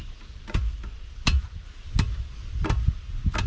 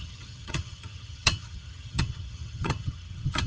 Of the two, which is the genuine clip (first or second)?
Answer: first